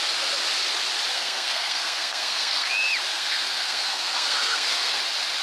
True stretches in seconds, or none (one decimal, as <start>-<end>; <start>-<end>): 0.0-1.1; 2.7-3.1; 5.0-5.4